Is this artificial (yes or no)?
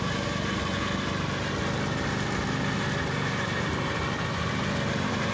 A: no